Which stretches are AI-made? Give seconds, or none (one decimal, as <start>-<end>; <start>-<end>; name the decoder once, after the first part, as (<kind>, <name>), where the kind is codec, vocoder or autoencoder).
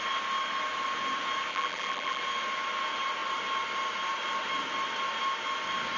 1.5-2.2 (vocoder, BigVGAN v2)